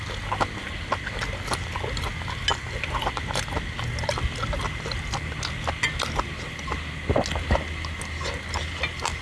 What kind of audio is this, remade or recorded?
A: recorded